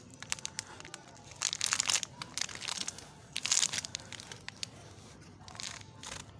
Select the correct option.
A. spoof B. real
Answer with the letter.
B